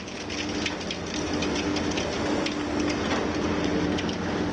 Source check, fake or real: real